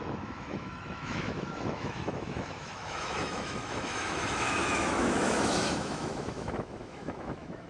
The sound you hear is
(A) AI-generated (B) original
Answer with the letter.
A